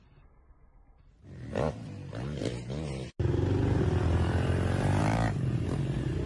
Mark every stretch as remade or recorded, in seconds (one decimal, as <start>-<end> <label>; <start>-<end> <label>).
0.0-6.3 recorded